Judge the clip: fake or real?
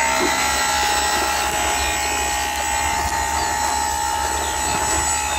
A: real